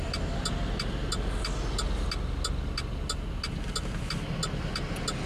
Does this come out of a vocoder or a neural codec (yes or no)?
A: no